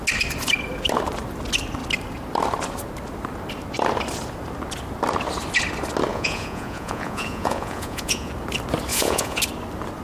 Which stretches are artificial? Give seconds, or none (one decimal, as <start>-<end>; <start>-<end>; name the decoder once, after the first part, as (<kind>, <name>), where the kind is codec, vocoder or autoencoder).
6.1-8.3 (vocoder, Vocos); 8.9-9.4